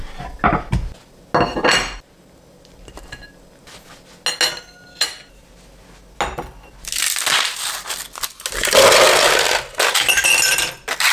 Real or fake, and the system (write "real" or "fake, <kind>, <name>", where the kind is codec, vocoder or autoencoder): real